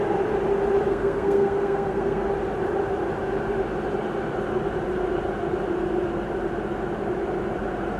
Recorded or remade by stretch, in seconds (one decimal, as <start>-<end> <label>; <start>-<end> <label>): 0.0-0.9 recorded; 0.9-2.3 remade; 2.3-8.0 recorded